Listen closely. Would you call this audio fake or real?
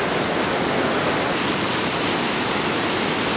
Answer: real